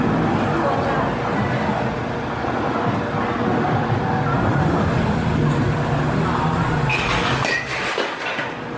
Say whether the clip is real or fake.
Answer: real